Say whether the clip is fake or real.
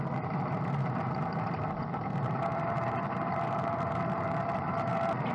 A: fake